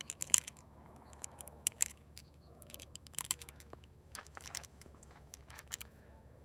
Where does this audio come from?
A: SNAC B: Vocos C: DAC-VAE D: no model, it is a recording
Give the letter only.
C